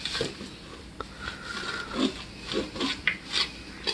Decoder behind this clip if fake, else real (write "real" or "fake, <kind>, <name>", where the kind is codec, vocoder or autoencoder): real